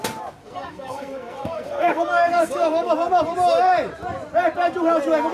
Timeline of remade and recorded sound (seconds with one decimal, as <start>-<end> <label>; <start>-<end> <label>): 0.0-0.4 recorded; 0.4-2.9 remade; 2.9-5.3 recorded